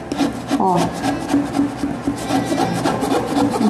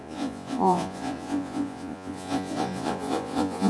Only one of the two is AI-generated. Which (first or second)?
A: second